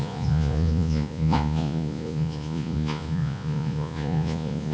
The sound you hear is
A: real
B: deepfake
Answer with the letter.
B